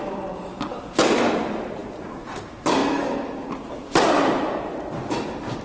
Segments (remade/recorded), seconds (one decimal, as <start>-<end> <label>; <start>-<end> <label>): 0.0-5.6 recorded